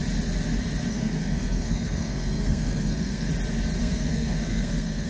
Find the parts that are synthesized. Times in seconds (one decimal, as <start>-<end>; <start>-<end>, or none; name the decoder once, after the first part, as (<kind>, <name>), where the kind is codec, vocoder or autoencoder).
0.9-3.3 (codec, SNAC); 3.8-5.1